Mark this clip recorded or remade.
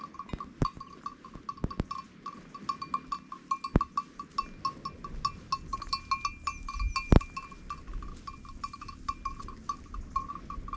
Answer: recorded